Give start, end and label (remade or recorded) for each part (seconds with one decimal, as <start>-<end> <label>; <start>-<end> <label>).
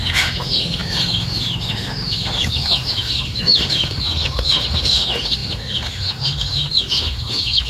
0.0-7.7 remade